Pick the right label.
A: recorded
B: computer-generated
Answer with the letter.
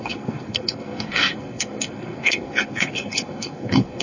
B